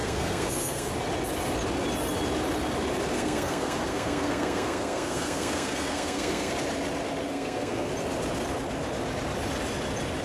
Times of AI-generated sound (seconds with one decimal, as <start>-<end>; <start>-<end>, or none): 0.0-0.9; 3.1-6.5; 7.2-7.9